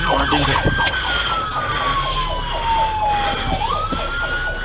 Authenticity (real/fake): real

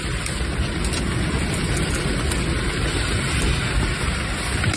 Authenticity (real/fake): real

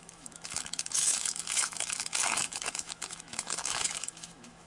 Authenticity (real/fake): fake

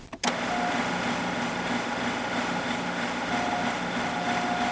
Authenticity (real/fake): real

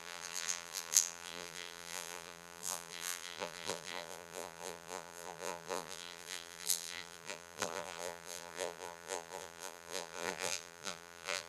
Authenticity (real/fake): fake